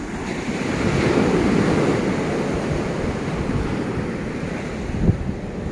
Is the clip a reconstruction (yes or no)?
no